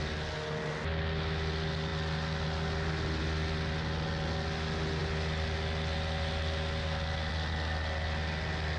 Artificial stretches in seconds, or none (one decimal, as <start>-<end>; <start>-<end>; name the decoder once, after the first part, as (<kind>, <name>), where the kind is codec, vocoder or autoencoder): none